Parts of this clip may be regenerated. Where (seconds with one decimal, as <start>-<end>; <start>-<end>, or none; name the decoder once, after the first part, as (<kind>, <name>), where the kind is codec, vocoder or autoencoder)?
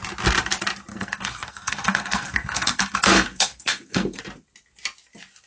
0.9-4.2 (codec, SNAC)